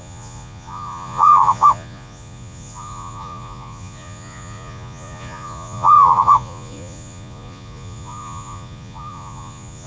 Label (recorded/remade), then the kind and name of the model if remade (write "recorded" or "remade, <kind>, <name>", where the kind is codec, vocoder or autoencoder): remade, vocoder, Vocos